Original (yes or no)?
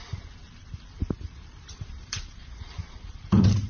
no